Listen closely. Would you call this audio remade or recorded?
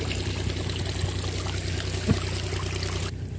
recorded